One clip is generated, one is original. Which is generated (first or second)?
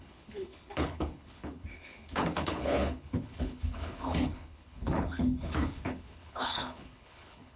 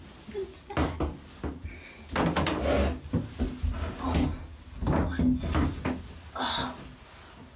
first